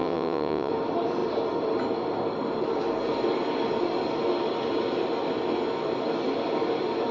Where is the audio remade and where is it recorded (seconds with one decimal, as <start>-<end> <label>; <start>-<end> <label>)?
0.0-0.7 remade; 0.7-7.1 recorded